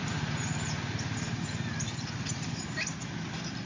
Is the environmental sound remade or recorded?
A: recorded